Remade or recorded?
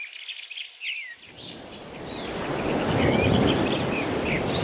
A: recorded